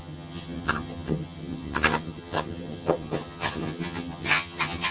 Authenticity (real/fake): fake